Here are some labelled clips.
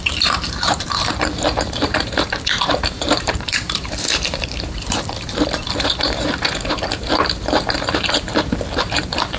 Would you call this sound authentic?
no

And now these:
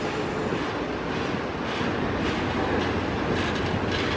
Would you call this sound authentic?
yes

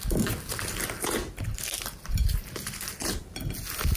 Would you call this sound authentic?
yes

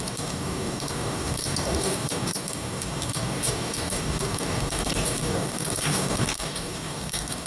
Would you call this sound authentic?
no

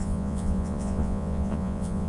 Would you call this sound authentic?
no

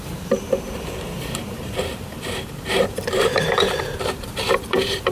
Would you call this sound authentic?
no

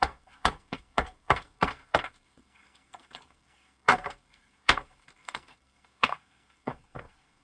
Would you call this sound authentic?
no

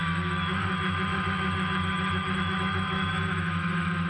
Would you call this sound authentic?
no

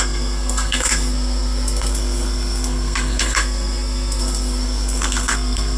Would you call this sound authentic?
no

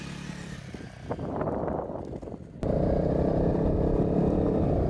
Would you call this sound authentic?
yes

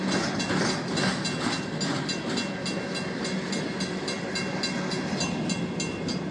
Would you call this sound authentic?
yes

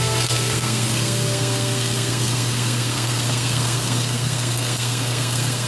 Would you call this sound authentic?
no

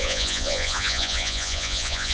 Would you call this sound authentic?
no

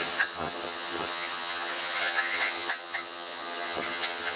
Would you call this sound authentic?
no